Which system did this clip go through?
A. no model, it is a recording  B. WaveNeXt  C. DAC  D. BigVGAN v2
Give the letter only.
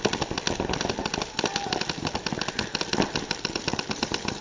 A